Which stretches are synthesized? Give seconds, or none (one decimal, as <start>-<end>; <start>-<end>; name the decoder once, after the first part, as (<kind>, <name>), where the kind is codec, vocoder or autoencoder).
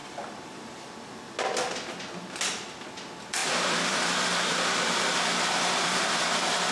0.0-0.6 (vocoder, BigVGAN v2); 3.4-6.7